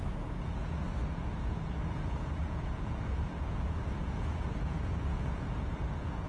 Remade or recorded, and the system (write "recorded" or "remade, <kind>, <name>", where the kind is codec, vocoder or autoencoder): remade, vocoder, Vocos